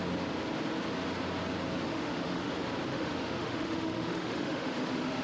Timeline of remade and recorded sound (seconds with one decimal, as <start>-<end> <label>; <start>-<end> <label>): 0.0-1.9 recorded; 1.9-2.5 remade; 2.5-2.9 recorded; 2.9-5.2 remade